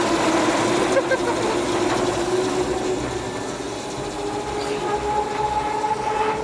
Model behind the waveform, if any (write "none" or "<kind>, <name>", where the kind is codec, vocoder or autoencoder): none